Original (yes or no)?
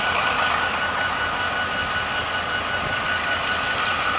yes